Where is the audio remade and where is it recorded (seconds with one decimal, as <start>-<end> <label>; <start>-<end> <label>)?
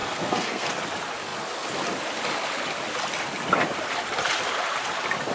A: 0.0-0.7 remade; 0.7-5.3 recorded